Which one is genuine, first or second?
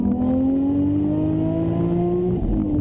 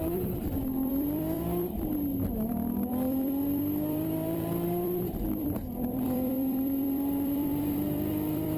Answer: first